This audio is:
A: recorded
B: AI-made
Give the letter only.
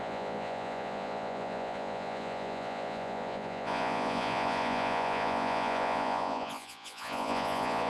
B